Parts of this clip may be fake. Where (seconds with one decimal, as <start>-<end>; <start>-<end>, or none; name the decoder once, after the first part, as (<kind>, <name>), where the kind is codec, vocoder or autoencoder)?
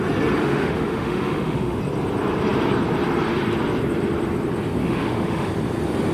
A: 0.4-1.8 (autoencoder, DAC-VAE); 4.8-5.5